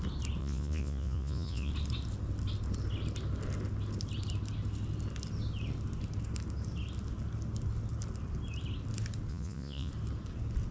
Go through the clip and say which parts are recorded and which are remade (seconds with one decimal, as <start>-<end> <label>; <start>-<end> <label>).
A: 0.0-0.4 recorded; 0.4-1.7 remade; 1.7-9.3 recorded; 9.3-9.9 remade; 9.9-10.7 recorded